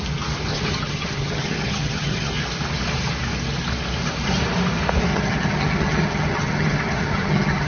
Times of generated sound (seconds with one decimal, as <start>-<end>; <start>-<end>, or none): 0.5-2.3; 5.1-7.7

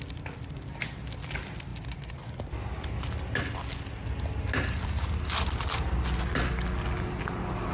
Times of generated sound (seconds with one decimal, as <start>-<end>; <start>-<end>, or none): none

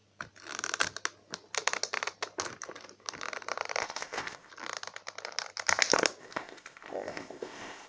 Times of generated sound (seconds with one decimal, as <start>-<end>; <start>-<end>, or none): 3.8-4.5; 6.2-7.9

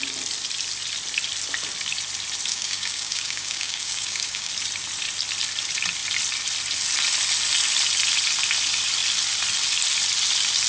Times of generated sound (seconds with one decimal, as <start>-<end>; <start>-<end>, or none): 2.5-4.5

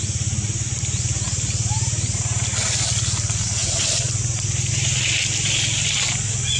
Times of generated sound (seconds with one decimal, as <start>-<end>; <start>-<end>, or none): none

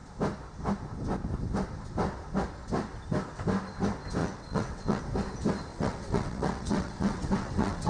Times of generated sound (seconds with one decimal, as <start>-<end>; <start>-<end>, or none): 4.2-5.0; 5.7-7.9

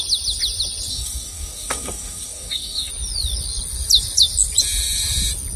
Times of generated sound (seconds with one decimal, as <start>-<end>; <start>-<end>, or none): 0.9-2.9